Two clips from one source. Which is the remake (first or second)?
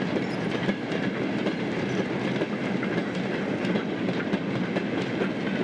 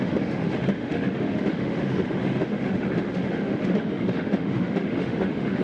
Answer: second